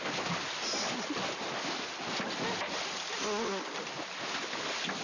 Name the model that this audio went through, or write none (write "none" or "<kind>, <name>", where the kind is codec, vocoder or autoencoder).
none